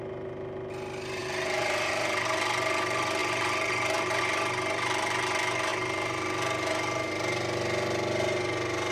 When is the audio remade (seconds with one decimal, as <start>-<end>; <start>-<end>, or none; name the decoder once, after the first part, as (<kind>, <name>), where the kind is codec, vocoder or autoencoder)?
1.2-1.9 (vocoder, BigVGAN v2); 3.2-4.2